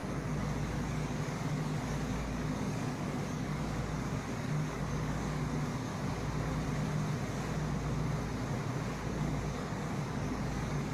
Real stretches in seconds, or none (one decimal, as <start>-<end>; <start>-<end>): 5.9-9.1